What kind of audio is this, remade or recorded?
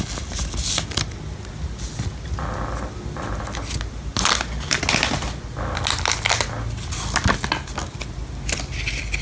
recorded